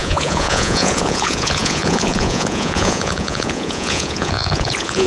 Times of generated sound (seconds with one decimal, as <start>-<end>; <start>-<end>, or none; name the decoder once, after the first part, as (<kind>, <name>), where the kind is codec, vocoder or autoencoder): 0.0-5.1 (vocoder, Vocos)